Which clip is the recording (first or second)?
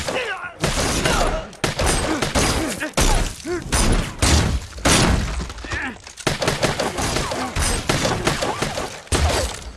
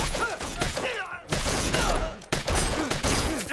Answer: first